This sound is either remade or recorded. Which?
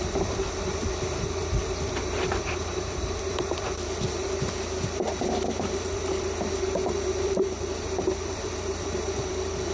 remade